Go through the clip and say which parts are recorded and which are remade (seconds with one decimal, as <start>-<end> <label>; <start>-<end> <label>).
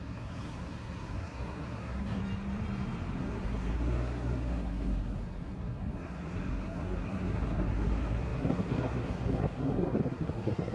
0.0-2.2 remade; 2.2-3.2 recorded; 3.2-10.7 remade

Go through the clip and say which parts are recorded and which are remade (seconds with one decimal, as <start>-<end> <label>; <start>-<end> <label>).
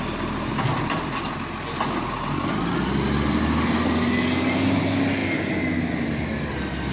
0.0-6.9 recorded